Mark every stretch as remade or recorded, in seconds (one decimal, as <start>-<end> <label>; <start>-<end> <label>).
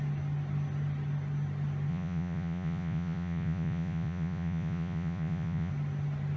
0.0-1.9 recorded; 1.9-5.7 remade; 5.7-6.4 recorded